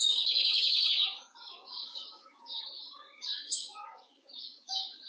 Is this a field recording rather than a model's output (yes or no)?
no